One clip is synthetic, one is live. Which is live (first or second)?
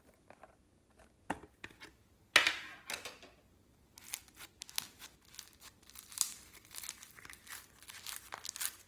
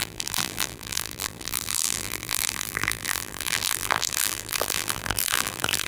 first